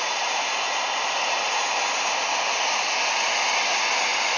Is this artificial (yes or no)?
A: no